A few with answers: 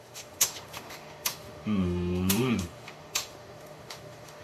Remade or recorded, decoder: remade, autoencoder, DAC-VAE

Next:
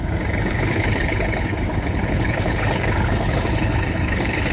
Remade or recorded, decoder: remade, codec, HILCodec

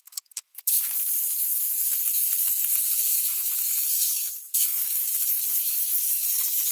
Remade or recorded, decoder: remade, codec, SNAC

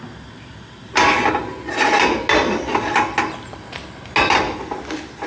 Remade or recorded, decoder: recorded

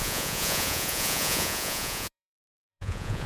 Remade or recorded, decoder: remade, vocoder, Vocos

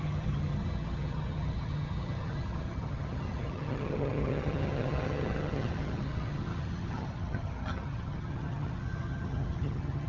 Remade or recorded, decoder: remade, vocoder, HiFi-GAN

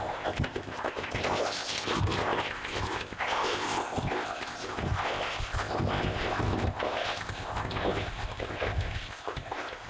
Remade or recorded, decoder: remade, codec, ZipCodec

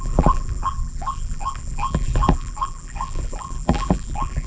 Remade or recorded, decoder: remade, vocoder, BigVGAN v2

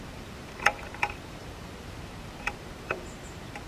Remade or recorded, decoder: remade, vocoder, BigVGAN v2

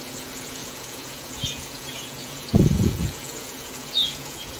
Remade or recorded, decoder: remade, vocoder, Vocos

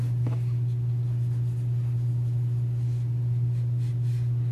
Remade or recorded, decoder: recorded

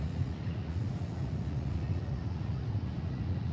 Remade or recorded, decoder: remade, vocoder, Vocos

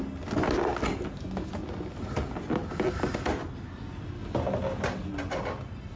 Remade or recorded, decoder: recorded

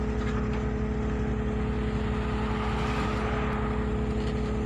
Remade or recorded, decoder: recorded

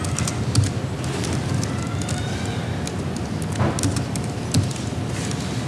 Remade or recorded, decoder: recorded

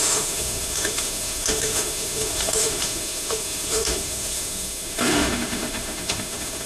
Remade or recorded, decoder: remade, autoencoder, DAC-VAE